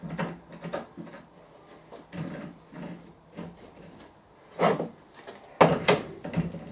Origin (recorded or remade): recorded